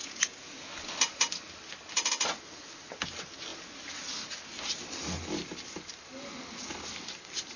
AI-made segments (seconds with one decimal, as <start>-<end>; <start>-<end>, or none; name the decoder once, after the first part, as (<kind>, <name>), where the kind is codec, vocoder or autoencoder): 0.0-0.7 (vocoder, Vocos)